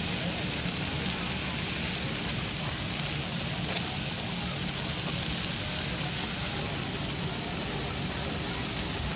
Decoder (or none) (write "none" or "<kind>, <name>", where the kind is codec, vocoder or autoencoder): none